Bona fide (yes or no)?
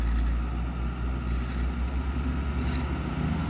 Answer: yes